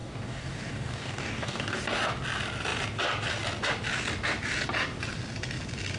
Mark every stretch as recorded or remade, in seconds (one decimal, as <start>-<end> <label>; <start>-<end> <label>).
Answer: 0.0-1.8 remade; 1.8-6.0 recorded